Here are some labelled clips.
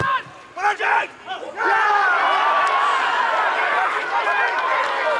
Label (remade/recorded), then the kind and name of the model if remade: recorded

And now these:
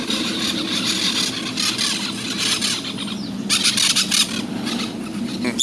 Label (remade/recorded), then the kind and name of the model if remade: recorded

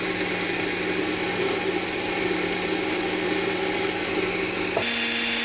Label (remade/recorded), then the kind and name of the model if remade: recorded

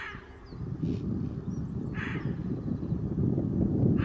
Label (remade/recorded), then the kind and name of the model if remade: recorded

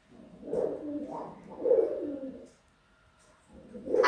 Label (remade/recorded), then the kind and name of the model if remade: recorded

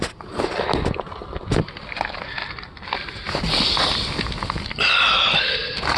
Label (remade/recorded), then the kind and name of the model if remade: recorded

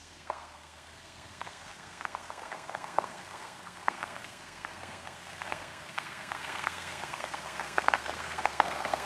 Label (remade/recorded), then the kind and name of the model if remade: remade, codec, SNAC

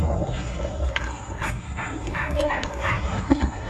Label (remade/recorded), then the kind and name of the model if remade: remade, codec, SNAC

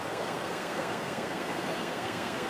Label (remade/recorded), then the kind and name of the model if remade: remade, codec, SNAC